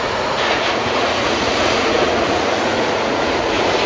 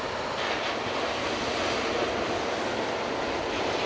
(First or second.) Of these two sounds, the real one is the second